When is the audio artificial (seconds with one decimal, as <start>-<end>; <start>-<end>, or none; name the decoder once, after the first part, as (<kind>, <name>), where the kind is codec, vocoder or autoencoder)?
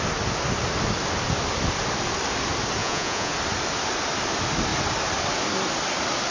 2.8-3.3 (vocoder, Vocos)